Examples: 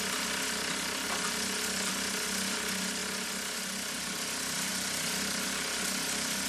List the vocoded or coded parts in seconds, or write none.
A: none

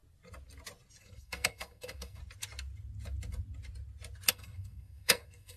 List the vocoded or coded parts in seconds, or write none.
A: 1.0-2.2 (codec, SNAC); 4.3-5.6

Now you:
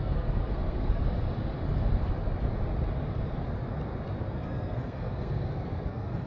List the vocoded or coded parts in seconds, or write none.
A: 0.0-1.0 (codec, SNAC); 4.2-6.3